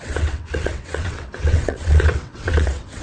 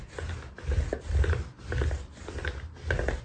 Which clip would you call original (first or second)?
second